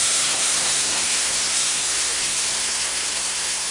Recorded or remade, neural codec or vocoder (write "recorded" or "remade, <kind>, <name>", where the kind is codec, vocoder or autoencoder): remade, codec, SNAC